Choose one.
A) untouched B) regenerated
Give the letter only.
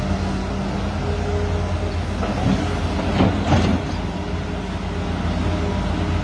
A